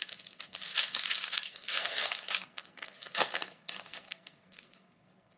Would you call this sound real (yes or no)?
no